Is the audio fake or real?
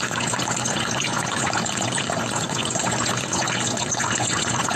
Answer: fake